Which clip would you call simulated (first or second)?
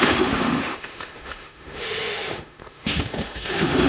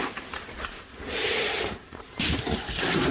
first